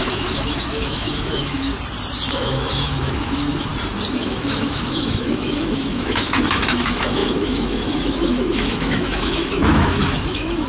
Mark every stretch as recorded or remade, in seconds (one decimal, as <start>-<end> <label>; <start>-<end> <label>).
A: 0.0-1.7 remade; 1.7-2.3 recorded; 2.3-3.7 remade; 3.7-4.2 recorded; 4.2-10.7 remade